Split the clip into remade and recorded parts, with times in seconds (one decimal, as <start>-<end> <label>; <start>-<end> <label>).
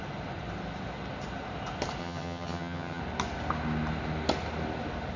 0.0-2.0 recorded; 2.0-3.0 remade; 3.0-5.2 recorded